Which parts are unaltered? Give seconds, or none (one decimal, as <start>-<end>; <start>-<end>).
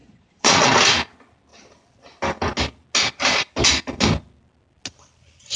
0.7-5.6